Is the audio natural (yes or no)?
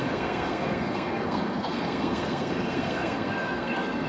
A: no